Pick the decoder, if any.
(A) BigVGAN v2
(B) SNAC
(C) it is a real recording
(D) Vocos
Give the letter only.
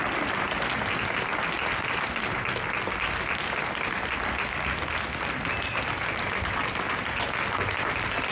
C